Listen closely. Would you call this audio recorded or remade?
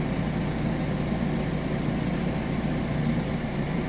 recorded